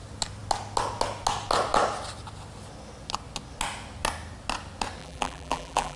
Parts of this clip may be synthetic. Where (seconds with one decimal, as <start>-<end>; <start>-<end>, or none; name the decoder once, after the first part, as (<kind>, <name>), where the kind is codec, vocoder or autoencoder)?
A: 5.0-6.0 (vocoder, BigVGAN v2)